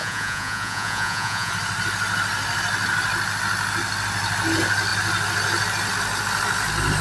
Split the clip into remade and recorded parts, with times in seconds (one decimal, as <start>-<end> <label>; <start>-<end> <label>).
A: 0.0-1.5 remade; 1.5-7.0 recorded

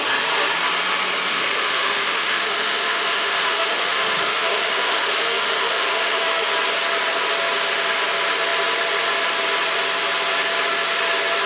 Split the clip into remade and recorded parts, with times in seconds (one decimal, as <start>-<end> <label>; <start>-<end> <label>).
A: 0.0-1.3 recorded; 1.3-6.5 remade; 6.5-11.5 recorded

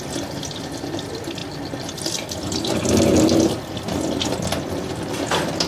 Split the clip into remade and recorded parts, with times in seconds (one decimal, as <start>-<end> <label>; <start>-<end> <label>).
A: 0.0-5.7 recorded

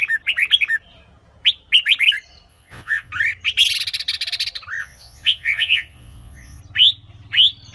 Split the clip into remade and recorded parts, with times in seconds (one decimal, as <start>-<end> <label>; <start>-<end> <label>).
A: 0.0-2.5 recorded; 2.5-3.1 remade; 3.1-4.8 recorded; 4.8-6.6 remade; 6.6-7.7 recorded